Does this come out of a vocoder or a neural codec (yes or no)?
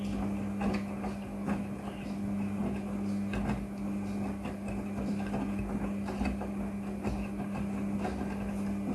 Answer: no